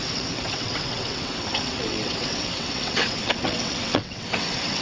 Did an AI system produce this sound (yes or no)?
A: yes